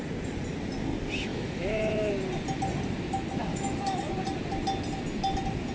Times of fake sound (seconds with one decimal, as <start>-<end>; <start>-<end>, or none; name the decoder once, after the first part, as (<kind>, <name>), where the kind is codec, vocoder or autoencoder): 1.3-2.1 (autoencoder, DAC-VAE); 3.5-4.0